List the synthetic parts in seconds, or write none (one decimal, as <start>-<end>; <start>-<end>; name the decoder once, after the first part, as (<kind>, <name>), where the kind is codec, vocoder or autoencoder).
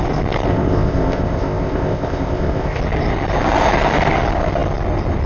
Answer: 0.5-2.8 (codec, ZipCodec)